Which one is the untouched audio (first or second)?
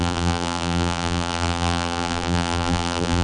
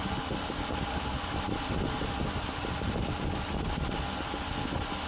second